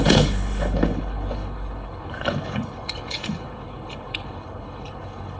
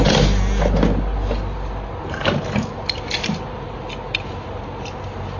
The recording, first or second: second